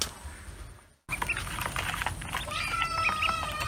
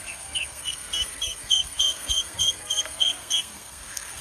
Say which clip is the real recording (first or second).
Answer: first